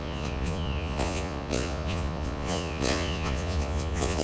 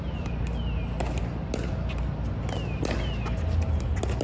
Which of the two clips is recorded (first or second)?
second